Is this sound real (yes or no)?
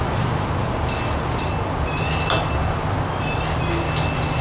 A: yes